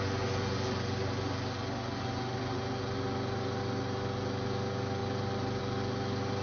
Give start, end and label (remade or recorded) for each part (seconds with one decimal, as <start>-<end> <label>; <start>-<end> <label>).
0.0-6.4 recorded